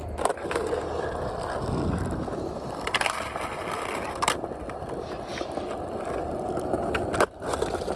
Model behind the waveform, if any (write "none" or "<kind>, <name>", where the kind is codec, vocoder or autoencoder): none